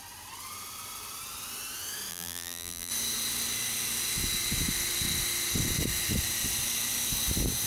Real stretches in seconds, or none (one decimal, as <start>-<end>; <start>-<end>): 0.0-2.1; 2.9-7.7